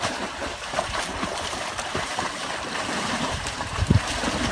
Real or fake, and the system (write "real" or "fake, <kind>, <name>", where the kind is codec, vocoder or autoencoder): fake, vocoder, BigVGAN v2